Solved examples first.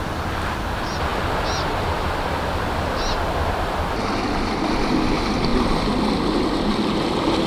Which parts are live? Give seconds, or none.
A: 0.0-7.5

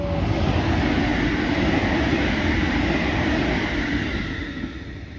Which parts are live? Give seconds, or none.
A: 0.0-1.1; 4.2-5.2

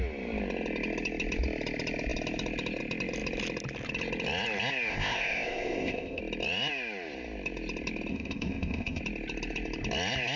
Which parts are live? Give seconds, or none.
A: 0.0-4.9; 6.2-8.1; 9.0-10.4

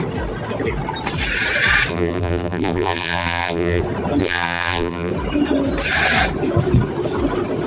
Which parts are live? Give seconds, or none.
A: 0.0-1.9; 3.8-4.2; 5.1-7.7

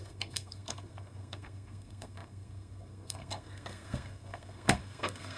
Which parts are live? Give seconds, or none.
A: none

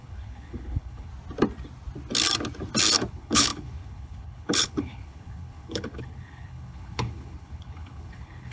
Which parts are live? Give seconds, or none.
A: 1.1-3.1